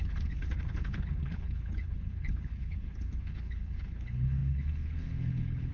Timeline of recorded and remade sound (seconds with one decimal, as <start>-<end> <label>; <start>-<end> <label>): 0.0-5.7 remade